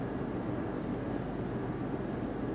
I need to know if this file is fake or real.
real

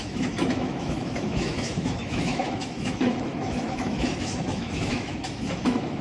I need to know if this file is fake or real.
fake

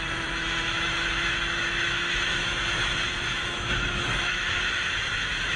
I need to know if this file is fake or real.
fake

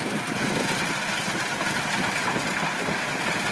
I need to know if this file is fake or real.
real